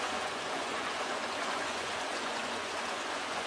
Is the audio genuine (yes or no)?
no